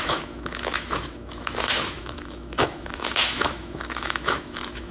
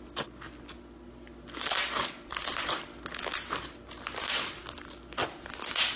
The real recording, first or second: second